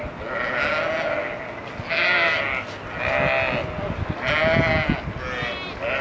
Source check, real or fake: real